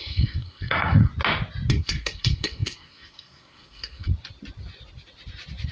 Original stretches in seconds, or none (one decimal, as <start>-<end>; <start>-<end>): 1.1-1.7; 4.1-5.7